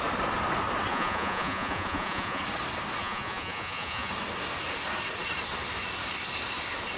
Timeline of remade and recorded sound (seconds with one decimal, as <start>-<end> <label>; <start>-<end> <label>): 0.0-0.9 recorded; 0.9-2.4 remade; 2.4-3.0 recorded; 3.0-4.1 remade; 4.1-7.0 recorded